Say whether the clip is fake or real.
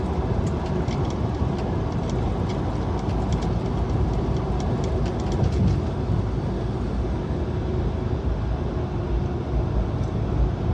real